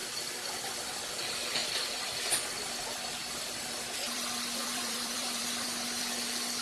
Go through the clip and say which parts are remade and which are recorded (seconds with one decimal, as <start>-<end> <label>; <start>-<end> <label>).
0.0-1.6 recorded; 1.6-2.8 remade; 2.8-3.2 recorded; 3.2-6.0 remade; 6.0-6.6 recorded